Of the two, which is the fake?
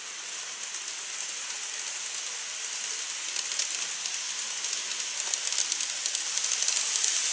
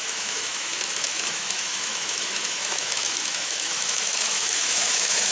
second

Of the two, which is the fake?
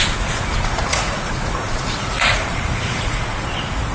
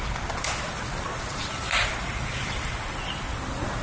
first